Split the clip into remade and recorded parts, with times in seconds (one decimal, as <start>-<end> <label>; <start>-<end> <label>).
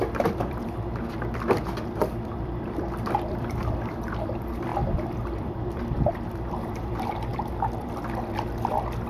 0.0-9.1 remade